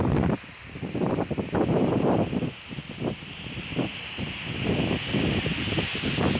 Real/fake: real